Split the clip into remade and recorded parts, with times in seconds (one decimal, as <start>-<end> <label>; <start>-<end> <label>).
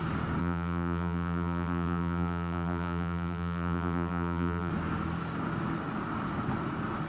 0.0-0.4 recorded; 0.4-4.7 remade; 4.7-7.1 recorded